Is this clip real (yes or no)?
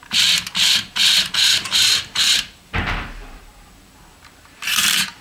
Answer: no